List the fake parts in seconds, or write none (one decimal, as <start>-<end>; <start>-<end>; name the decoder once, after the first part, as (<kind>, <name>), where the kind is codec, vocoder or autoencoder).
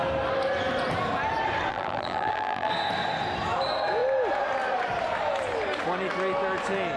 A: 1.7-2.7 (vocoder, BigVGAN v2)